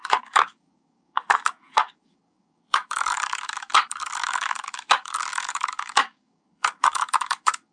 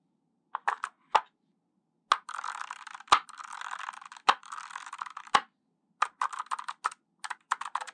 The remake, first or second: first